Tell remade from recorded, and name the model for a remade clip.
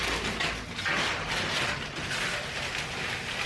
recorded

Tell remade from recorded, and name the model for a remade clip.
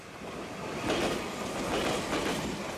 recorded